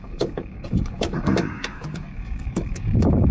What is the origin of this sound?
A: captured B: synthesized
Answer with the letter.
B